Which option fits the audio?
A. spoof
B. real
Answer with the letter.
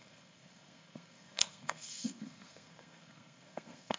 A